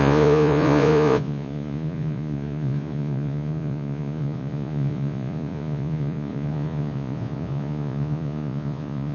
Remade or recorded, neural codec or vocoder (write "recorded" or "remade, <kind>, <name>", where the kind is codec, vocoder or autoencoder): remade, vocoder, Vocos